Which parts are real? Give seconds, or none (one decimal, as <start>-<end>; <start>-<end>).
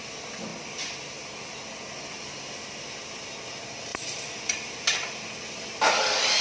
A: 0.0-3.9; 5.9-6.4